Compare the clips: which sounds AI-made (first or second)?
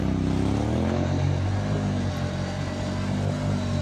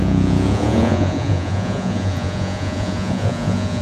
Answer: second